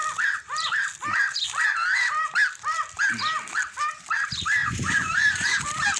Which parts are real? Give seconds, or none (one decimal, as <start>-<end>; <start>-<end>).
0.0-4.6; 5.6-6.0